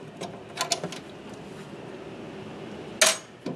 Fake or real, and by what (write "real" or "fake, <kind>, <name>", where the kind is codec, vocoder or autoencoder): real